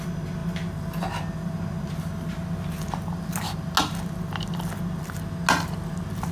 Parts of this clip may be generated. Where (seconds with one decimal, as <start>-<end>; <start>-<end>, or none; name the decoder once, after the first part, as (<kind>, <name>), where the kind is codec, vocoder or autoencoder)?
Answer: none